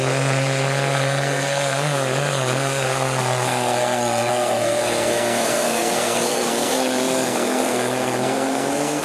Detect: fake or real fake